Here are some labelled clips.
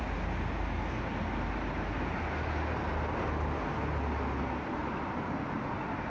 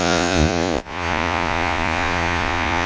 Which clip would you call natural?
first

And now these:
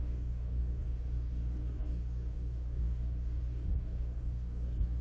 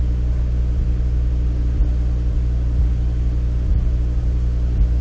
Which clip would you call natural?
second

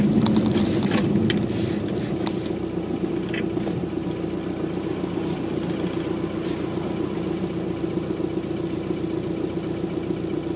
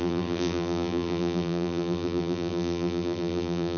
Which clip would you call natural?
first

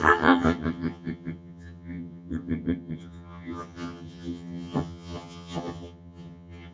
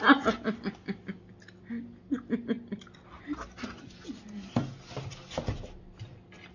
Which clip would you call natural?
second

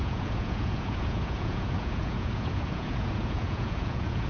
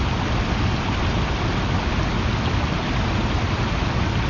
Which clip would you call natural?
second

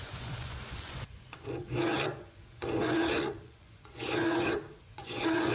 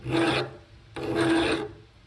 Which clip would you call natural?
second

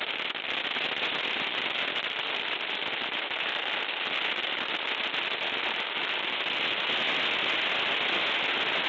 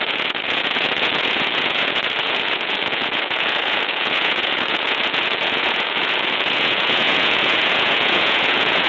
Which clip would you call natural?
first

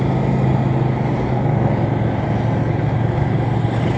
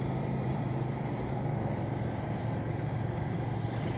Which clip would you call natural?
first